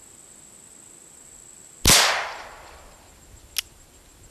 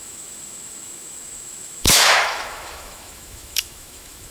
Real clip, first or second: first